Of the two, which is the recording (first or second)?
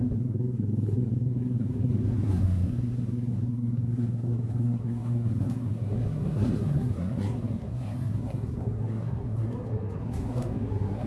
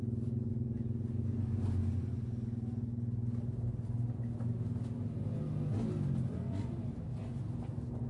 second